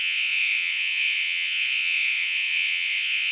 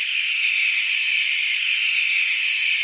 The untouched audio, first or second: second